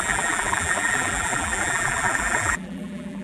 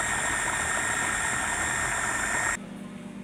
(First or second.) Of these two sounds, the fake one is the first